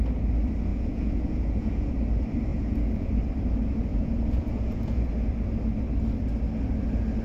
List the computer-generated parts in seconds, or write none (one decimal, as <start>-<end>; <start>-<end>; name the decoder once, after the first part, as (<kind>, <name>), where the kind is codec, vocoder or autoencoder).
0.7-1.9 (vocoder, Vocos); 2.5-3.1; 3.9-5.1